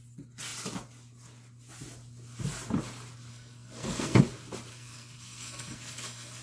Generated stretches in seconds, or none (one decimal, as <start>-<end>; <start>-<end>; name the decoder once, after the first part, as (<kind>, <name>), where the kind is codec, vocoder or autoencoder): 3.3-4.2 (codec, SNAC); 4.7-6.4